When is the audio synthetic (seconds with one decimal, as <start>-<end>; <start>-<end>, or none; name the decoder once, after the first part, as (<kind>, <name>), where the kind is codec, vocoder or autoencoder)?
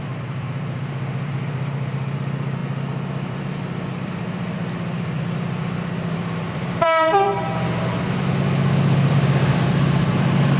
0.0-2.6 (vocoder, BigVGAN v2); 3.3-7.3; 9.1-10.6